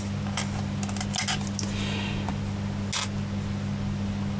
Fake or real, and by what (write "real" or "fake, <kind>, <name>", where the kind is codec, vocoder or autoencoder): real